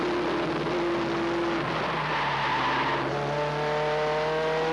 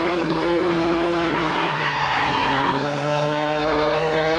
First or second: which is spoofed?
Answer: second